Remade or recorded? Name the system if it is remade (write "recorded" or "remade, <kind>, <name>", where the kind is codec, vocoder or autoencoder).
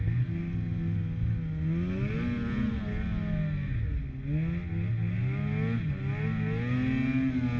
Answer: recorded